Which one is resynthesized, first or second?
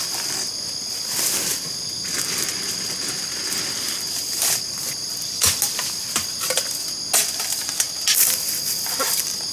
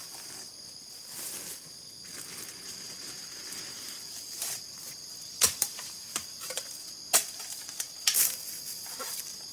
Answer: second